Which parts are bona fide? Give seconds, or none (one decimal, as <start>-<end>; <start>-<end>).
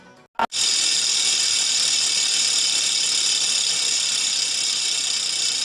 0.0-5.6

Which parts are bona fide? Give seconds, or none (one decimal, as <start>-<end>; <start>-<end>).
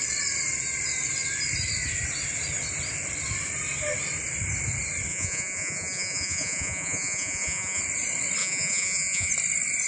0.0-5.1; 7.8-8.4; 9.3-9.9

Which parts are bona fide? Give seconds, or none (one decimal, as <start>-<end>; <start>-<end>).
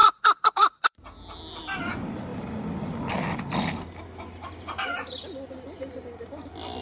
1.0-6.8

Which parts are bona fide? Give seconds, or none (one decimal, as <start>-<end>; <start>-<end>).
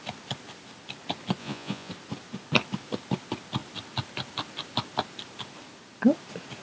0.0-1.4; 1.9-6.6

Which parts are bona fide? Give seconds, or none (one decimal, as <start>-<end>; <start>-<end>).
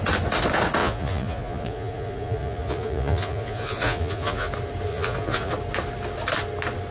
0.0-0.8; 4.5-4.9; 5.5-6.9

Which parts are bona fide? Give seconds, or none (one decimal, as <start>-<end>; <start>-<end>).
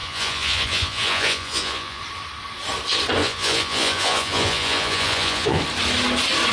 2.0-3.2; 5.6-6.5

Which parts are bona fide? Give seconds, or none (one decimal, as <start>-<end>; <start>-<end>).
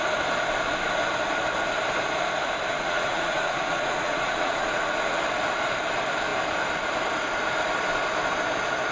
0.0-2.7; 5.2-8.9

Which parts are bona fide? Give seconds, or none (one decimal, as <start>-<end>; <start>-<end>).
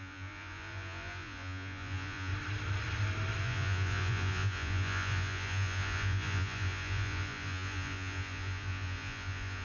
2.3-3.4